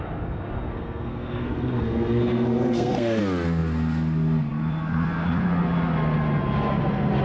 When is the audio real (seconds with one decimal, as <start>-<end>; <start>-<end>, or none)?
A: 0.0-0.7; 3.2-7.2